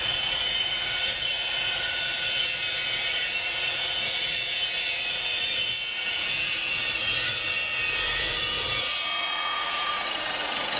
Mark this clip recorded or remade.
remade